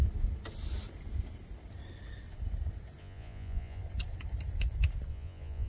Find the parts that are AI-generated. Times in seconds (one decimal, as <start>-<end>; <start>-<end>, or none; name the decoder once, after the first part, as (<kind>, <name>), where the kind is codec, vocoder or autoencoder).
3.0-3.8 (vocoder, Vocos); 5.1-5.7